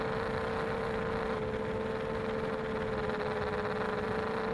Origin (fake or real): real